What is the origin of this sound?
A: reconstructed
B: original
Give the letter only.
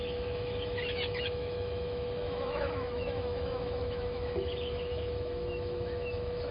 A